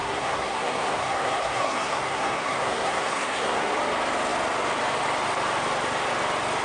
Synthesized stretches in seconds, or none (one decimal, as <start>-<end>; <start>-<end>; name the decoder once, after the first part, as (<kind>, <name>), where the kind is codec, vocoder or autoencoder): 0.0-3.7 (codec, SNAC)